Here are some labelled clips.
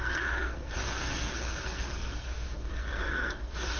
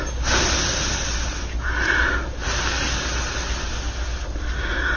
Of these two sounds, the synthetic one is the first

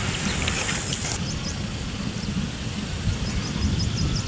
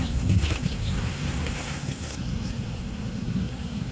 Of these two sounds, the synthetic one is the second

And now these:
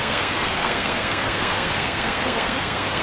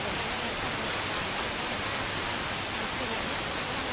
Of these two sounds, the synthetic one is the first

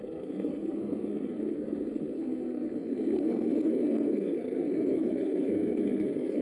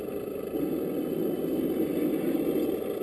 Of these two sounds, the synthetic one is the first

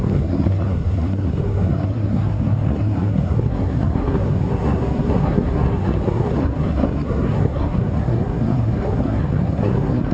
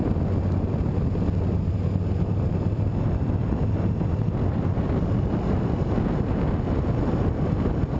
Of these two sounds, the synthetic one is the first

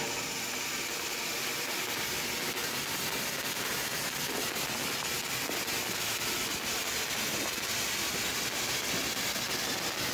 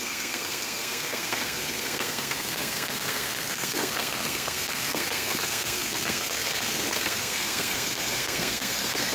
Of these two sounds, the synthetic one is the second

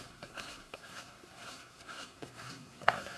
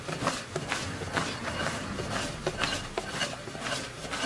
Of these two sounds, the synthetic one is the first